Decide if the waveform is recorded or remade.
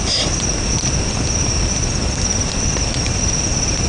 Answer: recorded